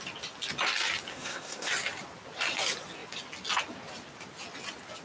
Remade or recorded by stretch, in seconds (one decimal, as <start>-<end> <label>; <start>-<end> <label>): 0.0-1.1 recorded; 1.1-1.7 remade; 1.7-5.0 recorded